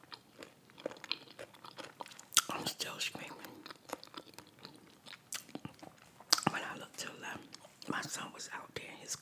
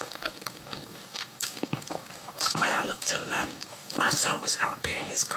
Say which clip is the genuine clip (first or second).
first